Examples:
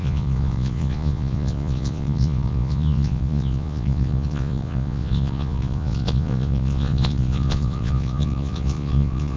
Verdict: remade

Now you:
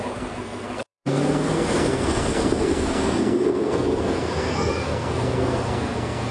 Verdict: remade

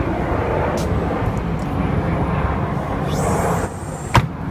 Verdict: recorded